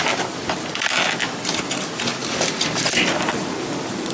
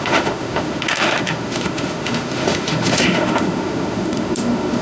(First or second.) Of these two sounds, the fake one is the second